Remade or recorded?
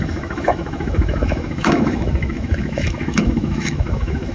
remade